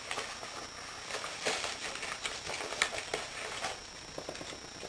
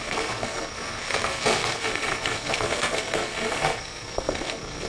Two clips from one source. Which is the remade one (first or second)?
second